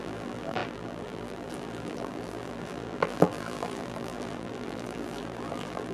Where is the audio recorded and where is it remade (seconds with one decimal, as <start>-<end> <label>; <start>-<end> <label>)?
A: 0.0-5.9 remade